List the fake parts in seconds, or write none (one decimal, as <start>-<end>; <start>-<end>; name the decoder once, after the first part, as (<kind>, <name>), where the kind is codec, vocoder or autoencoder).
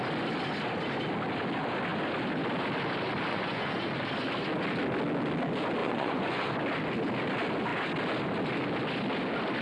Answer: 3.3-3.9 (vocoder, Vocos); 5.8-6.5